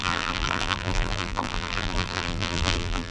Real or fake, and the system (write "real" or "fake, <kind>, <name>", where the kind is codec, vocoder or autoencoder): fake, vocoder, BigVGAN v2